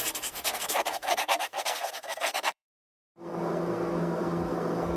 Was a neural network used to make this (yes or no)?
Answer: yes